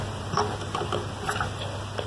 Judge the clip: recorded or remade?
recorded